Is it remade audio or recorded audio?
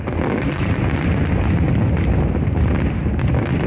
recorded